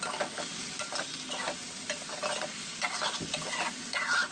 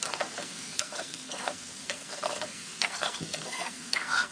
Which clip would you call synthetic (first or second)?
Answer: second